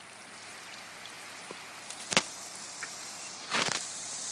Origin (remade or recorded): recorded